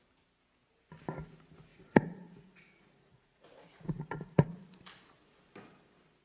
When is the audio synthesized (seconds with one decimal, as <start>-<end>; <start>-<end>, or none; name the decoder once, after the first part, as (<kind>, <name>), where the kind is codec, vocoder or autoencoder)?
1.7-4.6 (vocoder, Vocos)